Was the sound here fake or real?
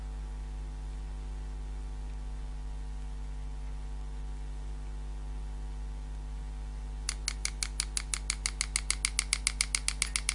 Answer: real